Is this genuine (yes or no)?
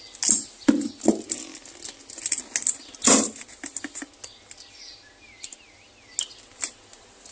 yes